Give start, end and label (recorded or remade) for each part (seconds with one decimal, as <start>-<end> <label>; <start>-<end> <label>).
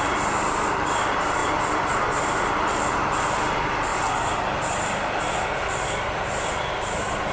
0.0-3.9 recorded; 3.9-5.2 remade; 5.2-7.3 recorded